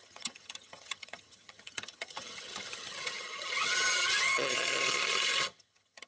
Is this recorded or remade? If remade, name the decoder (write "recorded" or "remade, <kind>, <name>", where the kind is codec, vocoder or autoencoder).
remade, vocoder, HiFi-GAN